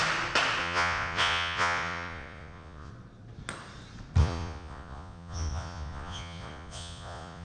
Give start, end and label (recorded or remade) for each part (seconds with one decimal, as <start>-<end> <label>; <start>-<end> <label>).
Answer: 0.0-0.6 recorded; 0.6-2.9 remade; 2.9-4.2 recorded; 4.2-7.4 remade